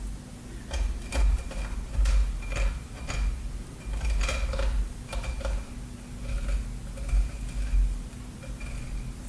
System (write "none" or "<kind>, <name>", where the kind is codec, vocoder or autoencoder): none